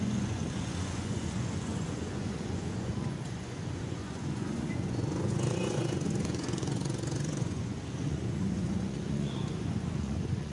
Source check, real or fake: fake